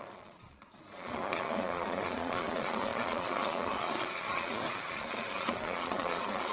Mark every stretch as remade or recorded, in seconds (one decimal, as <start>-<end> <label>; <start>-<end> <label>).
0.0-6.5 remade